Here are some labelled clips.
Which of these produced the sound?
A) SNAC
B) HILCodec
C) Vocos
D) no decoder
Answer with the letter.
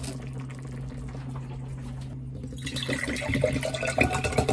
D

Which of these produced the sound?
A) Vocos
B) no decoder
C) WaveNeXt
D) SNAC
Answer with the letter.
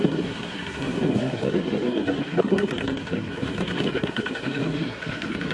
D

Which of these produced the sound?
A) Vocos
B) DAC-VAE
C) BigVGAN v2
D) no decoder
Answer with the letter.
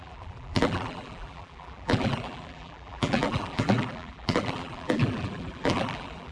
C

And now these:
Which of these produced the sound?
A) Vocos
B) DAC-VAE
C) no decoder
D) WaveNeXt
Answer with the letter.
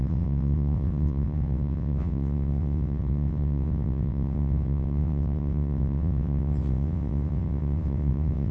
D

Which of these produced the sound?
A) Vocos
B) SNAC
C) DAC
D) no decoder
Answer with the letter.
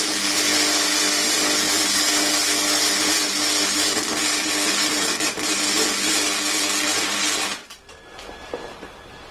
D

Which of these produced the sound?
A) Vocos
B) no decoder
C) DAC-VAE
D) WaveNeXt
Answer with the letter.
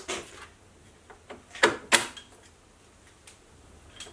B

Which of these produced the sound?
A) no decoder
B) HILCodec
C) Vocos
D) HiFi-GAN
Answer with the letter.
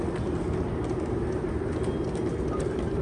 A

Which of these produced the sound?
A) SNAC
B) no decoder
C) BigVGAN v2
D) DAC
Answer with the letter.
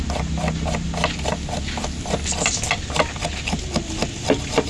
B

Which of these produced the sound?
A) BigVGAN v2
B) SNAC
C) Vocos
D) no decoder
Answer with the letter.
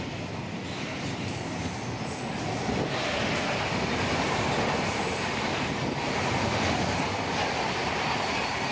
D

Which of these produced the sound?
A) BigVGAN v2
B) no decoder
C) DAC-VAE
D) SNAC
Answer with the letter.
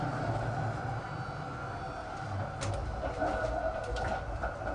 B